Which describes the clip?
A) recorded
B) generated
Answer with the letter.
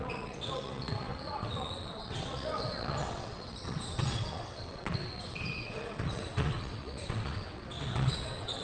B